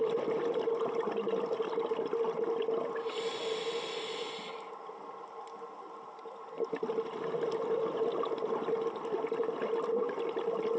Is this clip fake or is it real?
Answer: real